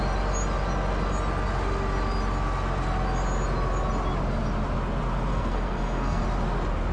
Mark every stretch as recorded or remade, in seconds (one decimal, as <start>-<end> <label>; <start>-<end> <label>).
0.0-5.3 recorded; 5.3-6.2 remade; 6.2-6.9 recorded